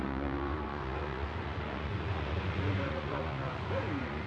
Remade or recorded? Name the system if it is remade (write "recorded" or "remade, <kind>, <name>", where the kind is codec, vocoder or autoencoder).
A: remade, vocoder, Vocos